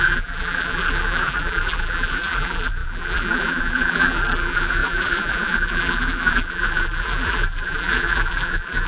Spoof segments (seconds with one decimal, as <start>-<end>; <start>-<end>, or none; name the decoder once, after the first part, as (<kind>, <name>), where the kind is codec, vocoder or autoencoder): 0.0-8.9 (vocoder, BigVGAN v2)